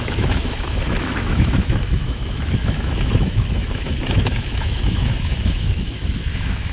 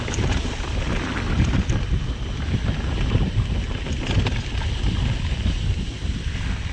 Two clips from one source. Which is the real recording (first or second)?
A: second